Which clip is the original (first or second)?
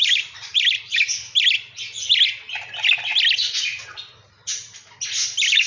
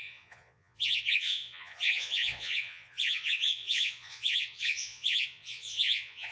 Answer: first